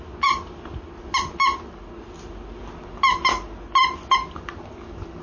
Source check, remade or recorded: recorded